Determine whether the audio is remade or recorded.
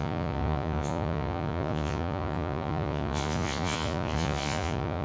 remade